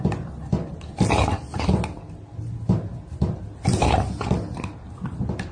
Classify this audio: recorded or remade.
recorded